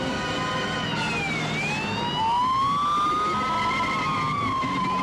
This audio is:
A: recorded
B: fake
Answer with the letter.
A